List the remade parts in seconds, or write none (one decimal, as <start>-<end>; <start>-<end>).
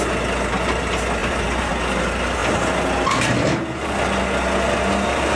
1.2-1.7